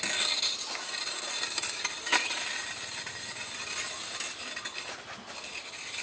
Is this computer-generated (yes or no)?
no